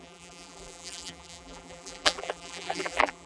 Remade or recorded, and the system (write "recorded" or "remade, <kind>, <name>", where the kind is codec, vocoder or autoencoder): remade, vocoder, BigVGAN v2